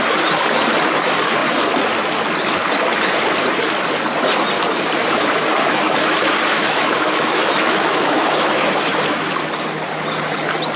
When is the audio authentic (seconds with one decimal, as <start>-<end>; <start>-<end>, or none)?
0.0-5.0; 8.9-10.8